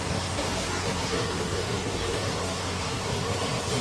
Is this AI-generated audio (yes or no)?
yes